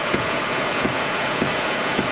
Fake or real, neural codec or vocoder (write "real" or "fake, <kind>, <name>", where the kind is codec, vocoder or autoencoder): fake, vocoder, Vocos